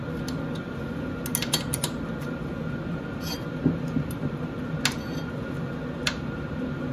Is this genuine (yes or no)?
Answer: yes